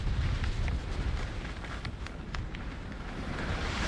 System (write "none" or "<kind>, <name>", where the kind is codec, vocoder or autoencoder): none